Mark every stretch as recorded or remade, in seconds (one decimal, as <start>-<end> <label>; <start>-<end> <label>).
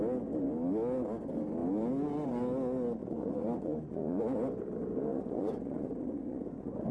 0.0-3.0 recorded; 3.0-4.2 remade; 4.2-5.1 recorded; 5.1-6.9 remade